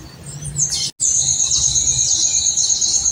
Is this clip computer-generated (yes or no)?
no